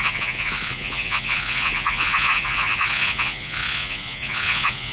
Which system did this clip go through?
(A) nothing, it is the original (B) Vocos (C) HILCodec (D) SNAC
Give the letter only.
B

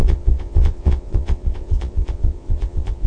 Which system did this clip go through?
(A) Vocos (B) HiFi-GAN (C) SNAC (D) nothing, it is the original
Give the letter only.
A